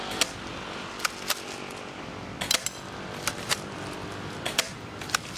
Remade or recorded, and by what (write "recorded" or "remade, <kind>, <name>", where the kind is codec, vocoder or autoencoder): recorded